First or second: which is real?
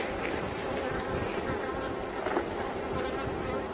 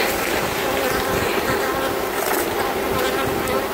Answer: second